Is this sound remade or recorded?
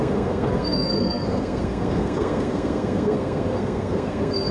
remade